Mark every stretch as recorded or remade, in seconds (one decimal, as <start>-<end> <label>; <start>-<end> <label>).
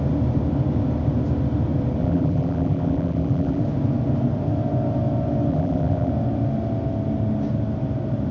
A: 0.0-2.0 recorded; 2.0-3.6 remade; 3.6-5.5 recorded; 5.5-6.1 remade; 6.1-8.3 recorded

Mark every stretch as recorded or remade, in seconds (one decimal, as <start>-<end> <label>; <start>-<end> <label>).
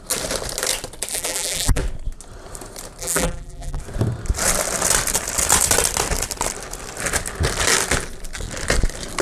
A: 0.0-1.1 recorded; 1.1-1.8 remade; 1.8-3.0 recorded; 3.0-3.8 remade; 3.8-9.2 recorded